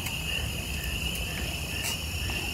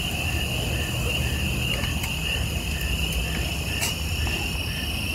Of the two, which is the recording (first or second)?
second